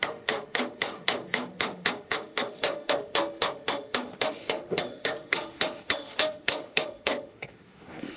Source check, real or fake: fake